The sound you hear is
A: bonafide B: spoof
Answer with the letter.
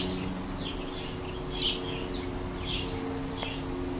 A